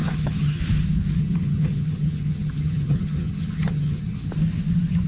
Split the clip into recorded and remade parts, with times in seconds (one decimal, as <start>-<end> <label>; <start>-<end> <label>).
0.0-0.6 remade; 0.6-1.2 recorded; 1.2-4.3 remade; 4.3-5.1 recorded